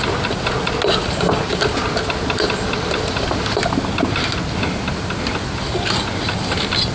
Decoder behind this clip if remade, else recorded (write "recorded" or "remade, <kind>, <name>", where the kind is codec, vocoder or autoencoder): recorded